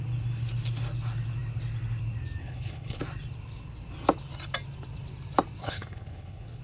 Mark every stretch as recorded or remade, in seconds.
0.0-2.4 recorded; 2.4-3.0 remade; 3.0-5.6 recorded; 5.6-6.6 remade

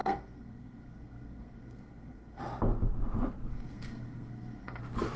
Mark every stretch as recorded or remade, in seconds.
0.0-2.4 remade; 2.4-3.5 recorded; 3.5-4.8 remade; 4.8-5.2 recorded